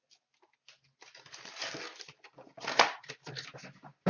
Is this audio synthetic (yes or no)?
no